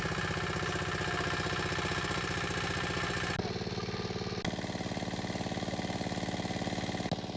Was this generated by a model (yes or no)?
no